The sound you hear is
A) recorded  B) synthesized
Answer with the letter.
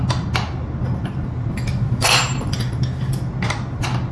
A